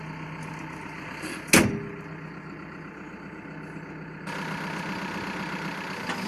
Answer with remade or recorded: recorded